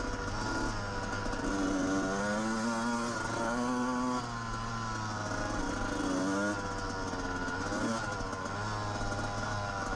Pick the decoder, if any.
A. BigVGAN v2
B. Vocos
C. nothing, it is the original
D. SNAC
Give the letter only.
C